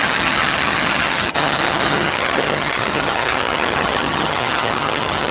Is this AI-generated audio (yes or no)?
yes